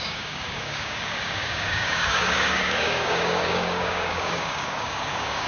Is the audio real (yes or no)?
no